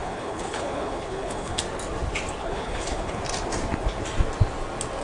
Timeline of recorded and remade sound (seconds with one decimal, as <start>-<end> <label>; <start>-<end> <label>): 0.0-1.6 remade; 1.6-2.4 recorded; 2.4-3.2 remade; 3.2-5.0 recorded